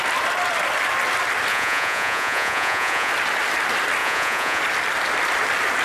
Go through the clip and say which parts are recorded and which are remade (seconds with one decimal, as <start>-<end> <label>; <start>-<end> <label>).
0.0-1.5 recorded; 1.5-3.1 remade; 3.1-4.0 recorded; 4.0-4.6 remade; 4.6-5.8 recorded